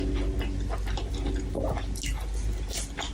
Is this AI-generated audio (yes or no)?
no